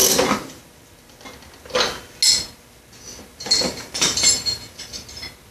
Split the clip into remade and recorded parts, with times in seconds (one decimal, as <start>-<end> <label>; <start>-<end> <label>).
0.0-0.6 remade; 0.6-3.3 recorded; 3.3-4.9 remade; 4.9-5.5 recorded